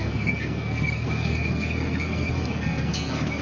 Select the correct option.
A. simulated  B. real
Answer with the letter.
A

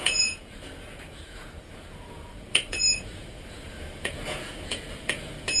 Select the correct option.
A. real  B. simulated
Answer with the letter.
B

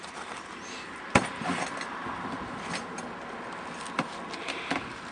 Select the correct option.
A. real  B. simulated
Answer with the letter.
A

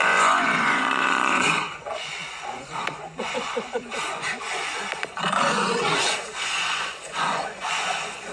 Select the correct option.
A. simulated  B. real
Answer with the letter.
A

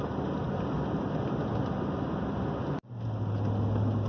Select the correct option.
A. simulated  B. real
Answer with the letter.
B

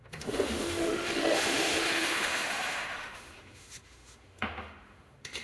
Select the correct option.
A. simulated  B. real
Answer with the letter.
A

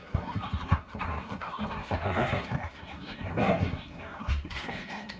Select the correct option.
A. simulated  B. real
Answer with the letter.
A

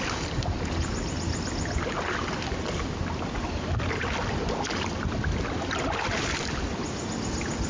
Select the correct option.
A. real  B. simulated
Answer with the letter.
A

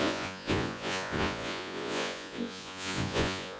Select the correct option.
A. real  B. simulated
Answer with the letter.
B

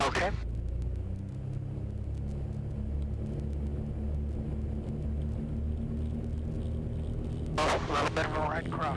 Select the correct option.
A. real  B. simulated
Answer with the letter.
A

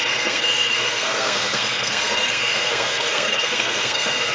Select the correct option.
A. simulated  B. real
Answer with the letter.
A